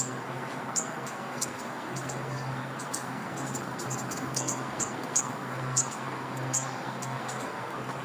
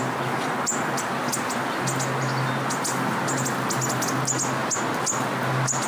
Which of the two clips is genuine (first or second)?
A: second